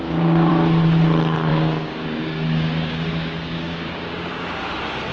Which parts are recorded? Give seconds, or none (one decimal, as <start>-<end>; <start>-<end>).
0.5-1.5; 4.6-5.1